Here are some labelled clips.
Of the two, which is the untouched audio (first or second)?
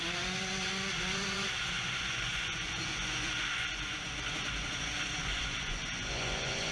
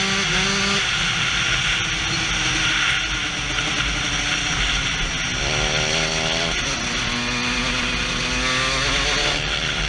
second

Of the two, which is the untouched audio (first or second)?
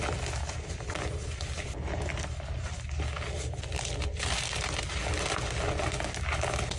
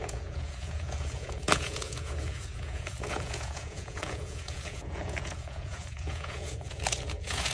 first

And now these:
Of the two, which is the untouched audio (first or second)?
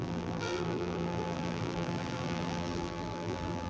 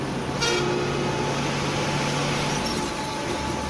second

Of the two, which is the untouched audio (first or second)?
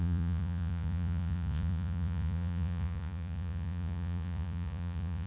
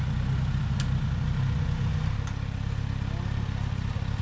second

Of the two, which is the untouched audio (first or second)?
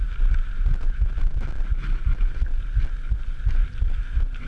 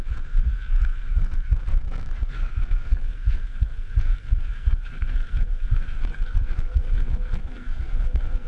first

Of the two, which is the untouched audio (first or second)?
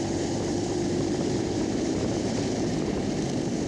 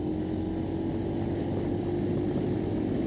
second